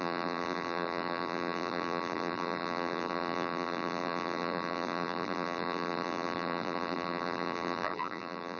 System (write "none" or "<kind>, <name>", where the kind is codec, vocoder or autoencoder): vocoder, BigVGAN v2